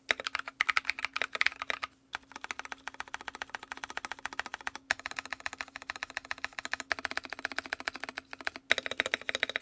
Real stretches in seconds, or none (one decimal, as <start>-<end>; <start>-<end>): 0.0-9.6